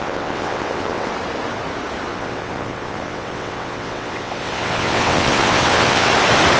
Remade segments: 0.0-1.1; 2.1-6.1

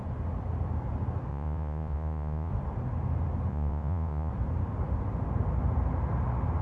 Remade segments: 1.3-2.5; 3.5-4.3

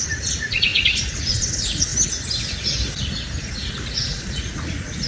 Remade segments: 0.0-1.9; 3.4-5.1